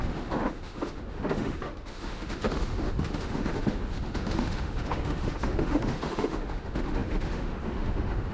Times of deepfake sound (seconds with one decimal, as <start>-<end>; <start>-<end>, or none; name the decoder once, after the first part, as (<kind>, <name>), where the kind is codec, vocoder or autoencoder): 0.0-8.3 (autoencoder, DAC-VAE)